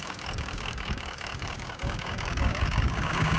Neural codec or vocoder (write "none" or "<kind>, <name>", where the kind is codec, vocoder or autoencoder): codec, DAC